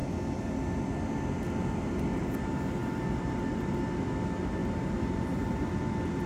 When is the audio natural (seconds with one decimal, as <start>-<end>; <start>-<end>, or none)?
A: 0.0-4.6; 5.6-6.3